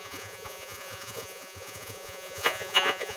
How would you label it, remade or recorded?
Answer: remade